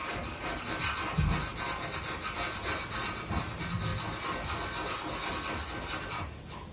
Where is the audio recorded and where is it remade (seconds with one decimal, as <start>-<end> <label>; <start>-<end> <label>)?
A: 0.0-6.7 recorded

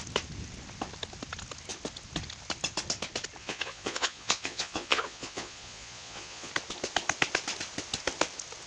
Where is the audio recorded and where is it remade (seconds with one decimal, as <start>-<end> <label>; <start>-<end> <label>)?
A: 0.0-3.4 recorded; 3.4-6.5 remade; 6.5-8.7 recorded

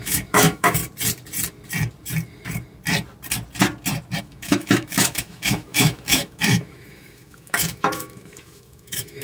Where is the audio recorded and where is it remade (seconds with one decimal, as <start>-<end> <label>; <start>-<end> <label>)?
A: 0.0-0.8 remade; 0.8-4.2 recorded; 4.2-9.2 remade

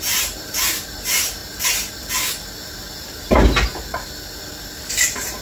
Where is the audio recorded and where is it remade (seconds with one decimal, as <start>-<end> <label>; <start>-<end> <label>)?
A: 0.0-1.4 remade; 1.4-4.6 recorded; 4.6-5.4 remade

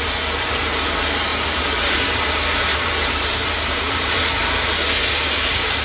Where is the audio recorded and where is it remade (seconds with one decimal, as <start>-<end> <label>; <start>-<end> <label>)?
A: 0.0-1.3 recorded; 1.3-2.0 remade; 2.0-2.7 recorded; 2.7-4.2 remade; 4.2-5.8 recorded

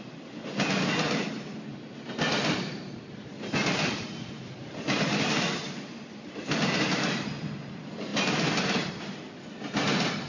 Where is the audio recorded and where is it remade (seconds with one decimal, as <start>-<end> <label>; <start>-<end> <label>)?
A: 0.0-10.3 recorded